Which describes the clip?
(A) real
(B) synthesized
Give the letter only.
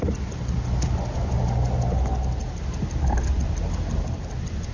A